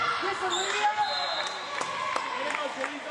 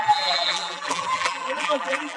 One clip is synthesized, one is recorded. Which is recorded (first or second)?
first